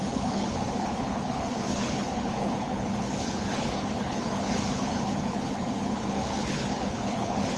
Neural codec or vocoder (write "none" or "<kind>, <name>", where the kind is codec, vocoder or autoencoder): codec, HILCodec